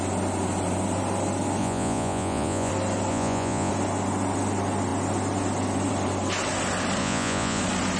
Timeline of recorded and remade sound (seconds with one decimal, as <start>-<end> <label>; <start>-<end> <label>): 0.0-1.6 recorded; 1.6-2.7 remade; 2.7-3.1 recorded; 3.1-3.7 remade; 3.7-7.0 recorded; 7.0-7.6 remade; 7.6-8.0 recorded